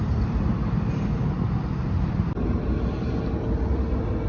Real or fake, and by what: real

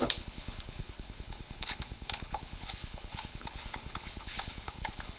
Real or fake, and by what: fake, codec, HILCodec